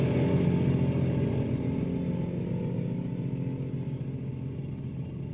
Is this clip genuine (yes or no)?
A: yes